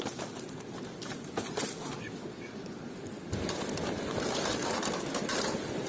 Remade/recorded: recorded